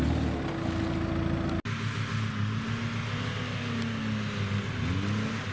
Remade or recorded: recorded